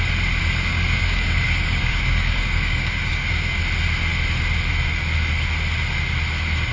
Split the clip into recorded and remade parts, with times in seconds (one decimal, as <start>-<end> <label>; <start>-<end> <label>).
0.0-0.7 recorded; 0.7-3.6 remade; 3.6-6.7 recorded